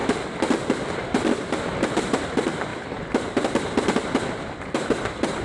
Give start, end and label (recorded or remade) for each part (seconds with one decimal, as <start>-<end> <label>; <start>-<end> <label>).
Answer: 0.0-0.9 recorded; 0.9-2.7 remade; 2.7-4.7 recorded; 4.7-5.4 remade

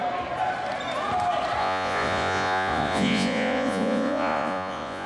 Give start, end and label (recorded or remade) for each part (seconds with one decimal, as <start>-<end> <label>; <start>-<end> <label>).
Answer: 0.0-1.6 recorded; 1.6-5.1 remade

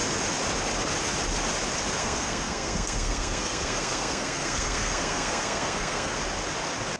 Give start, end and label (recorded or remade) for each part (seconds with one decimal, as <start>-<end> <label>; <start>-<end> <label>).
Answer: 0.0-2.0 recorded; 2.0-6.2 remade; 6.2-7.0 recorded

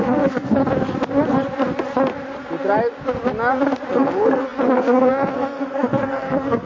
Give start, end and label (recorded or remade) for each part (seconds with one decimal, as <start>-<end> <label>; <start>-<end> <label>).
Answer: 0.0-0.6 remade; 0.6-3.9 recorded; 3.9-6.7 remade

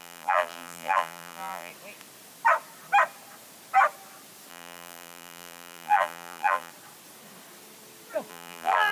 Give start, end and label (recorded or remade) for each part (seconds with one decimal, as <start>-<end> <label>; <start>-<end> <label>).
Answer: 0.0-1.7 remade; 1.7-4.5 recorded; 4.5-6.7 remade; 6.7-8.3 recorded; 8.3-8.9 remade

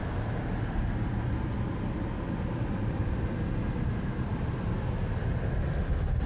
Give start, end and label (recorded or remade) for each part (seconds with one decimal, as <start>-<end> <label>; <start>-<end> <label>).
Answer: 0.0-6.3 recorded

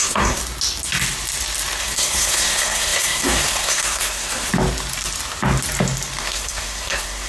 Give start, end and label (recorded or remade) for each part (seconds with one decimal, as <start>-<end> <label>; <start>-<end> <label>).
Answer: 0.0-0.4 remade; 0.4-1.8 recorded; 1.8-4.5 remade; 4.5-6.2 recorded; 6.2-7.3 remade